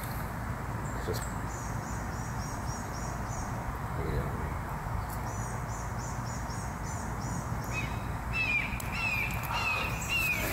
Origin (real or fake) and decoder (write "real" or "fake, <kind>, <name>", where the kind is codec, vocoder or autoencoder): real